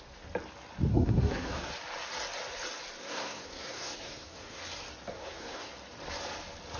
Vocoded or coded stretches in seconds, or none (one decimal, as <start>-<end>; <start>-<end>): 0.9-1.7; 3.0-4.6; 5.1-5.7